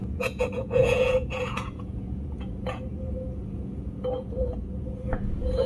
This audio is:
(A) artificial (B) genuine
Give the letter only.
A